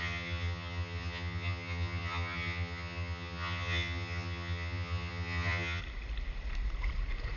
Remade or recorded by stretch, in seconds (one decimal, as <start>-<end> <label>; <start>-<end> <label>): 0.0-5.8 remade; 5.8-7.4 recorded